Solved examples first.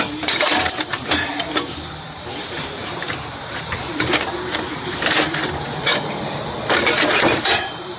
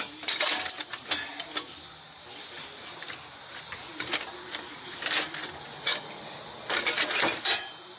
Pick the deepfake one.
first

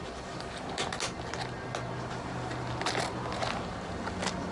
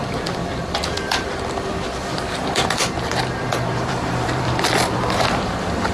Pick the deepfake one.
second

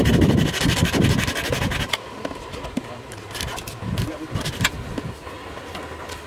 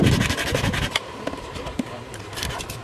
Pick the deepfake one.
second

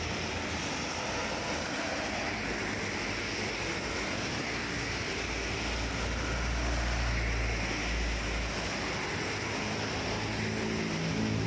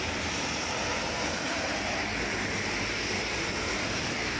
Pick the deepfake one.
second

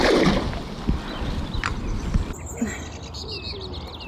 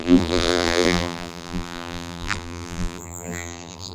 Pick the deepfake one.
second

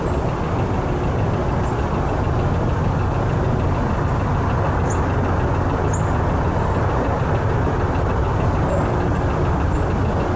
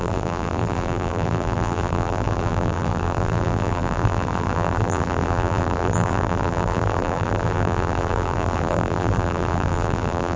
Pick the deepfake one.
second